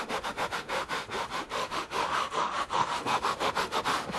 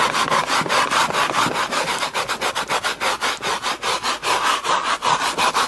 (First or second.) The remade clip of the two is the first